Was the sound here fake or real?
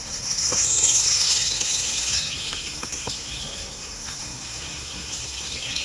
fake